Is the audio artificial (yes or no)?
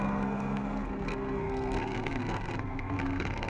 yes